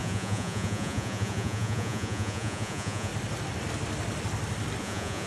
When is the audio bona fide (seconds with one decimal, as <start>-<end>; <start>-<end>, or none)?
3.1-4.8